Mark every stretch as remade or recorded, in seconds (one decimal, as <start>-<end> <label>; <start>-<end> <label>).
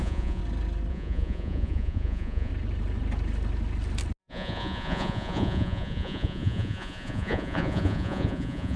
0.0-0.4 remade; 0.4-0.9 recorded; 0.9-2.5 remade; 2.5-4.2 recorded; 4.2-8.8 remade